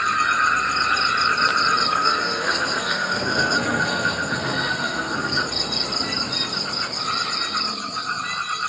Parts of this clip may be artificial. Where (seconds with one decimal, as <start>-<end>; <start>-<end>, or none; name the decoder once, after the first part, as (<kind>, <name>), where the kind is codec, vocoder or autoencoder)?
1.9-5.4 (codec, SNAC)